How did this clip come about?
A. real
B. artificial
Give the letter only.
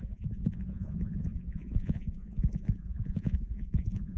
B